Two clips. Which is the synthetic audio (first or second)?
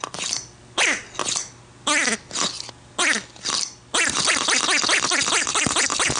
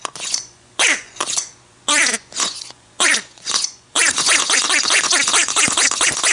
second